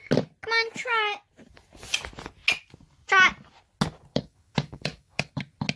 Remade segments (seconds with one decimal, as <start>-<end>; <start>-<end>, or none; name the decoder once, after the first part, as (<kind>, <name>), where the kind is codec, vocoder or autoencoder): 4.1-5.3 (codec, DAC)